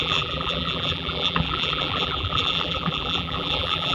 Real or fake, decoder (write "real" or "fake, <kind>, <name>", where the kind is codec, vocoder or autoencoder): fake, vocoder, BigVGAN v2